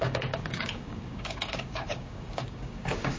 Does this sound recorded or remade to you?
remade